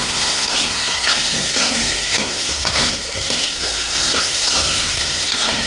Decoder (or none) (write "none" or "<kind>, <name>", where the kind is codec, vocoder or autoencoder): codec, SNAC